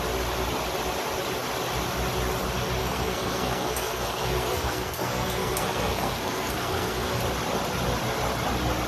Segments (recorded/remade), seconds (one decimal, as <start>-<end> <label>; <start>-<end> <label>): 0.0-2.8 recorded; 2.8-7.2 remade; 7.2-8.9 recorded